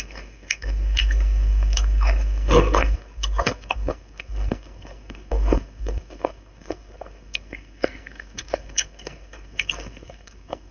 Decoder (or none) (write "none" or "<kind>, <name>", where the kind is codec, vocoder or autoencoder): codec, SNAC